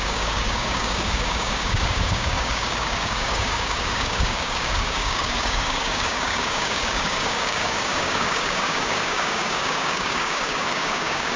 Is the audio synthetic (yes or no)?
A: yes